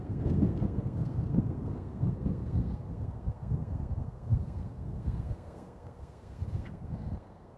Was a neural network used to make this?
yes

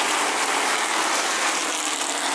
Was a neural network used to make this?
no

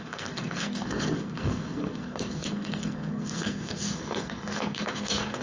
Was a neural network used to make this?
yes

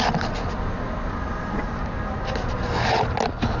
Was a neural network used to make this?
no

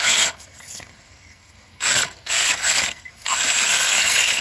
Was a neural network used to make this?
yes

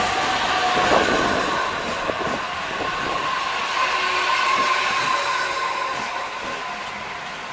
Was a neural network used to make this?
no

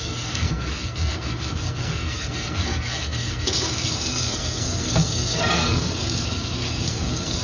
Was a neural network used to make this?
yes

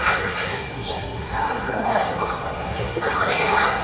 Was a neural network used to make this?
yes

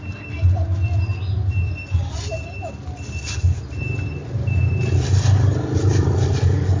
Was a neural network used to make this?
no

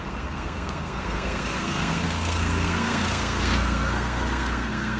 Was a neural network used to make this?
yes